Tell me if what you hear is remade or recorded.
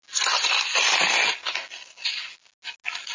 recorded